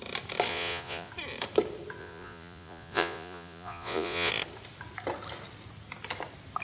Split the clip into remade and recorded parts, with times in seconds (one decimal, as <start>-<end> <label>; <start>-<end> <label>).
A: 0.0-0.5 recorded; 0.5-1.1 remade; 1.1-2.0 recorded; 2.0-4.3 remade; 4.3-6.6 recorded

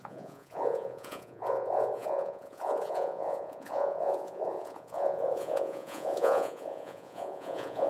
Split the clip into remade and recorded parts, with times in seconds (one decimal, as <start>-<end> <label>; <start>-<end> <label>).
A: 0.0-7.9 remade

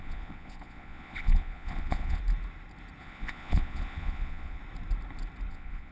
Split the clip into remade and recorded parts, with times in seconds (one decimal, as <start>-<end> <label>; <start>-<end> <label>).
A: 0.0-2.2 remade; 2.2-3.0 recorded; 3.0-4.6 remade; 4.6-5.5 recorded; 5.5-5.9 remade

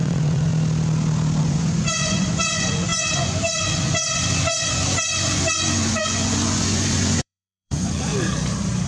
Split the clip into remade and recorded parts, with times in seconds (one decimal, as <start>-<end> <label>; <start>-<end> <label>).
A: 0.0-0.5 remade; 0.5-1.4 recorded; 1.4-8.1 remade; 8.1-8.9 recorded

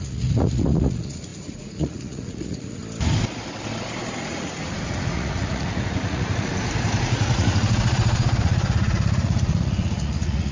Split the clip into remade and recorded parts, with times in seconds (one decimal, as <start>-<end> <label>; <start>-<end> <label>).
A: 0.0-2.8 remade; 2.8-4.2 recorded; 4.2-6.5 remade; 6.5-7.0 recorded; 7.0-10.5 remade

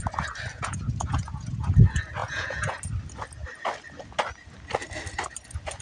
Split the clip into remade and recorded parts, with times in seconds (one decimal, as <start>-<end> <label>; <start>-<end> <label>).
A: 0.0-0.5 recorded; 0.5-1.7 remade; 1.7-2.2 recorded; 2.2-2.8 remade; 2.8-5.8 recorded

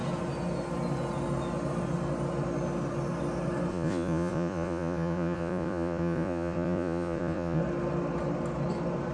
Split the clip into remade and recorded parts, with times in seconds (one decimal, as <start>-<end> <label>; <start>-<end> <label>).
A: 0.0-3.7 recorded; 3.7-7.6 remade; 7.6-9.1 recorded

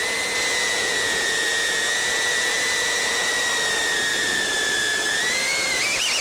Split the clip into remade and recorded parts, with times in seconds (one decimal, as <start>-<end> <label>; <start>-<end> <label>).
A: 0.0-3.3 remade; 3.3-4.1 recorded; 4.1-6.2 remade